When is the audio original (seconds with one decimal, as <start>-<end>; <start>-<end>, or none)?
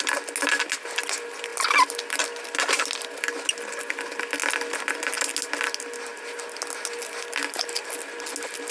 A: 0.0-8.7